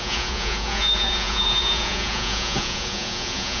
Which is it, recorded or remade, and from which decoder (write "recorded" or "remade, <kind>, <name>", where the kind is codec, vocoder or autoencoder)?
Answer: remade, vocoder, Vocos